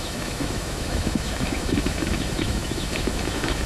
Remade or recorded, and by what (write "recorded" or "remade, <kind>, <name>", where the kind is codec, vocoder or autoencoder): remade, autoencoder, DAC-VAE